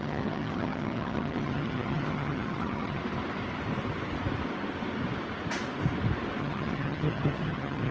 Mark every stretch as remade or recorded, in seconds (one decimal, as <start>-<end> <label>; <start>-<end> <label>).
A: 0.0-3.0 remade; 3.0-6.4 recorded; 6.4-7.9 remade